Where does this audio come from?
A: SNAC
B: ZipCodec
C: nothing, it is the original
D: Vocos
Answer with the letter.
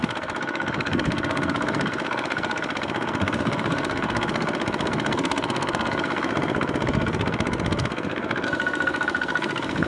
A